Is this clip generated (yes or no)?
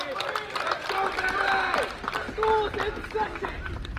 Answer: no